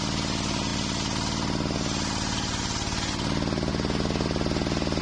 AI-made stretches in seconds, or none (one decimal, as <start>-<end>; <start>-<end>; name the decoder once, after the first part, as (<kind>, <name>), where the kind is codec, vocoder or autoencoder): none